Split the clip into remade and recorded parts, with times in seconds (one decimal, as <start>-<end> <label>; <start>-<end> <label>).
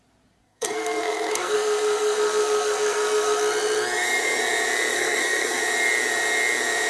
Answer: 0.0-0.4 recorded; 0.4-3.4 remade; 3.4-4.9 recorded; 4.9-5.6 remade; 5.6-6.9 recorded